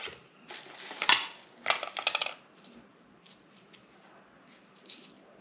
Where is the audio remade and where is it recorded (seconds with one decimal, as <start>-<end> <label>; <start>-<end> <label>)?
0.0-5.4 recorded